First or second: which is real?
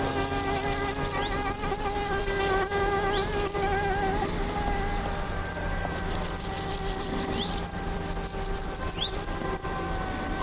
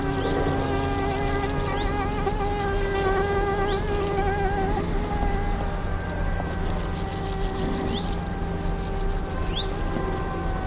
second